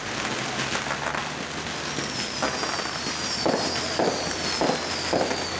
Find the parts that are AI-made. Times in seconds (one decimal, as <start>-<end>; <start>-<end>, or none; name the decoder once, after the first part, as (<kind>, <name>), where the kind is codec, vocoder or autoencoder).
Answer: none

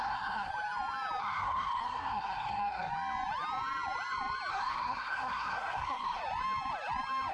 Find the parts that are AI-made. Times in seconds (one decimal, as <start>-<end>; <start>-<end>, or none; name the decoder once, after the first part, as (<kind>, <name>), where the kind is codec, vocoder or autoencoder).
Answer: 0.0-0.5 (codec, SNAC); 1.2-2.9; 4.5-6.2

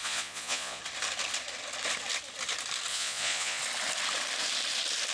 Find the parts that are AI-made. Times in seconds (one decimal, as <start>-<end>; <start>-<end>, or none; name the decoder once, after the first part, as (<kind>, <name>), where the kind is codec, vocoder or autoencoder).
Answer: 0.0-0.8 (vocoder, Vocos); 2.9-3.6

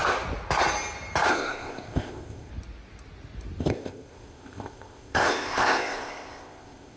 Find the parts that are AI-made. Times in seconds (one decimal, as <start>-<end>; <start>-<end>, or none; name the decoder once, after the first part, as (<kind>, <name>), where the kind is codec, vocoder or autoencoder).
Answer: 1.3-2.5 (codec, ZipCodec); 3.6-7.0

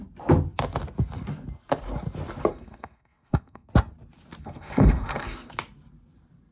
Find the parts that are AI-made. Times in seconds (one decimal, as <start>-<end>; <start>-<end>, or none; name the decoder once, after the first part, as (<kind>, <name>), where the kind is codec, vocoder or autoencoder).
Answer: 2.5-3.7 (codec, SNAC); 4.4-5.5